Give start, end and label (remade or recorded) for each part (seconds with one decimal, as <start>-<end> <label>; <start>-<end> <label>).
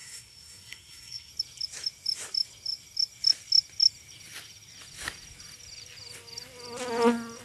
0.0-1.3 remade; 1.3-7.4 recorded